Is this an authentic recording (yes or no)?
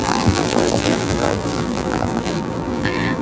no